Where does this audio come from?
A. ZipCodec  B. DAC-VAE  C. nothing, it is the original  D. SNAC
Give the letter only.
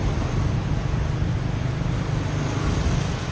C